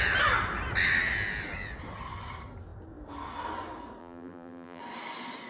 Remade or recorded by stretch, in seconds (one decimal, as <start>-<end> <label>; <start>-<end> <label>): 0.0-4.0 recorded; 4.0-4.8 remade; 4.8-5.5 recorded